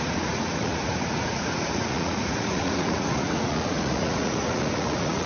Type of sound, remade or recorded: remade